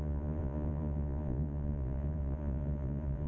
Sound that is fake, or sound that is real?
fake